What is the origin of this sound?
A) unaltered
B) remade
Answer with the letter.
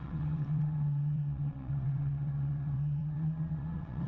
B